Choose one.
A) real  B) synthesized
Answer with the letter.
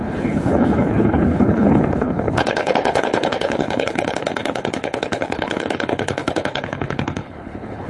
B